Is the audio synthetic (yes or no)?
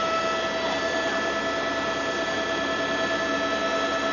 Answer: no